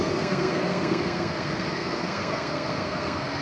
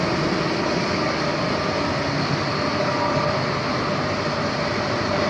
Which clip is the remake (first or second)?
first